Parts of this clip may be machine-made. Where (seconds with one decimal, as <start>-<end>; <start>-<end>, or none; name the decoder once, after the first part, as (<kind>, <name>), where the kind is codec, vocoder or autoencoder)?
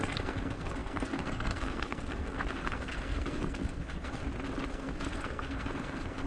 0.0-4.2 (codec, SNAC); 4.7-6.3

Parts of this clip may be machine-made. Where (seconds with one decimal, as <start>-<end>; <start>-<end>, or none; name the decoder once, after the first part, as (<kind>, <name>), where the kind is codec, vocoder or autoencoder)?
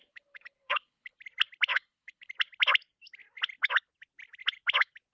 0.0-1.2 (codec, HILCodec); 1.7-2.3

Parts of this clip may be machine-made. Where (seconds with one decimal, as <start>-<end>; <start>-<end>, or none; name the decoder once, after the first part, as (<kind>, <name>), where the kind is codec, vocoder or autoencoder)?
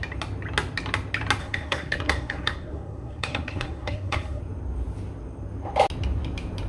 1.4-4.4 (codec, SNAC)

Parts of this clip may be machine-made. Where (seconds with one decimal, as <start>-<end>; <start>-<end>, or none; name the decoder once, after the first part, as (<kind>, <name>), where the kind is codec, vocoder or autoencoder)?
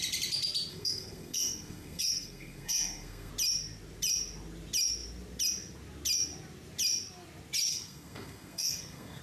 0.7-3.3 (codec, SNAC); 7.7-9.2